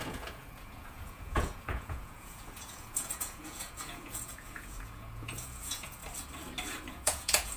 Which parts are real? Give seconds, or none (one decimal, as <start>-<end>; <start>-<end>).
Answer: 6.0-6.9